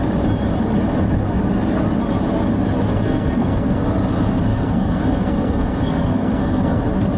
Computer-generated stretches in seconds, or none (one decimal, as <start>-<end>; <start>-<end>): 2.9-3.8; 4.5-6.8